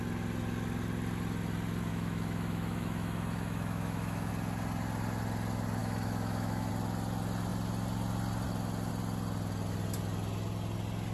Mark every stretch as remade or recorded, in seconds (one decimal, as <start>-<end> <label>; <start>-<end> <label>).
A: 0.0-1.9 recorded; 1.9-4.3 remade; 4.3-5.8 recorded; 5.8-6.7 remade; 6.7-11.1 recorded